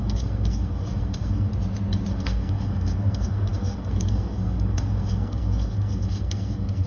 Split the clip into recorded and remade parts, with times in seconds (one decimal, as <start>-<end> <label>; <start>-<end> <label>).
0.0-1.5 remade; 1.5-2.1 recorded; 2.1-6.9 remade